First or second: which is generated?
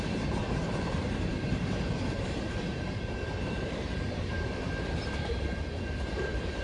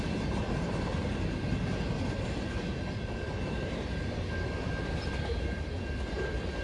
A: first